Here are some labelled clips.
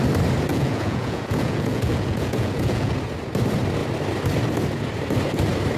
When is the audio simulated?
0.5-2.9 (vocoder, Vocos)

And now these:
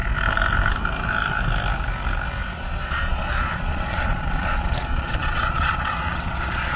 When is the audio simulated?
2.5-6.8 (vocoder, Vocos)

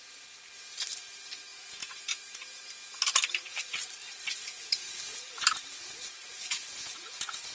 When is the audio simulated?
1.5-2.6 (vocoder, Vocos); 4.5-5.0; 6.2-7.5

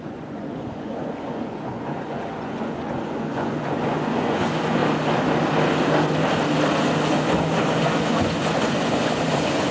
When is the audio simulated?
0.0-4.8 (vocoder, Vocos); 7.1-9.7

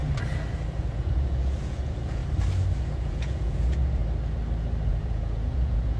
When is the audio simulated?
0.8-2.2 (vocoder, Vocos); 2.8-4.0; 4.9-6.0

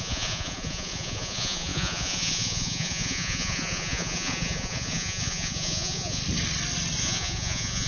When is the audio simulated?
0.0-6.2 (vocoder, Vocos); 7.0-7.9

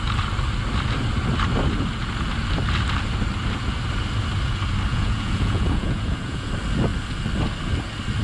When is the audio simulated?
4.9-6.5 (vocoder, Vocos)